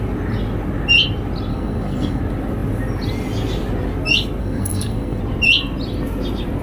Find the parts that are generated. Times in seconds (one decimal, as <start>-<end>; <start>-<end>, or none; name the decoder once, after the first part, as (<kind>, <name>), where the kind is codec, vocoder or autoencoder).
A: 1.5-2.2 (codec, SNAC); 4.4-5.2